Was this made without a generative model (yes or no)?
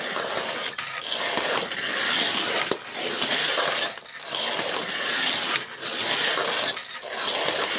yes